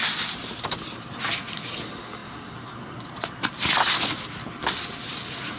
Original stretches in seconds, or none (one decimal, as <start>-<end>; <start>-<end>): 0.0-5.6